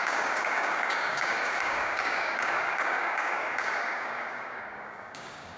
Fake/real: fake